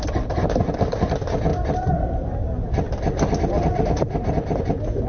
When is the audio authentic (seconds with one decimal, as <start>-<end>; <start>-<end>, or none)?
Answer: 0.0-5.1